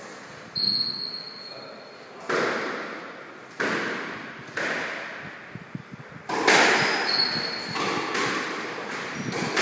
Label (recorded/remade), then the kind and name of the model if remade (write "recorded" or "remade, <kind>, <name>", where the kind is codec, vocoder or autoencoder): recorded